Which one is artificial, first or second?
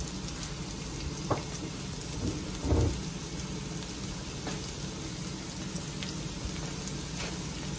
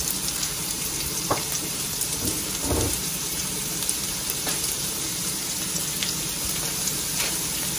second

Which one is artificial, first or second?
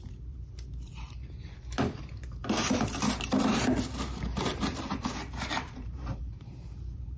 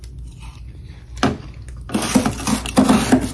first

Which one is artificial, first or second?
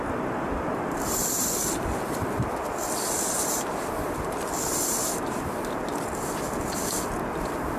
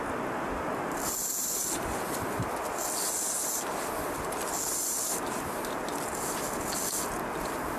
first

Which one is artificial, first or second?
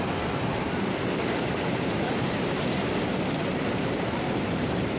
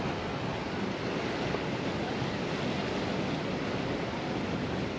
first